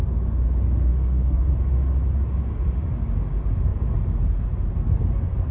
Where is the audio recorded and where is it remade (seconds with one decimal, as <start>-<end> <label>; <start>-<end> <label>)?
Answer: 0.0-0.9 recorded; 0.9-1.5 remade; 1.5-5.5 recorded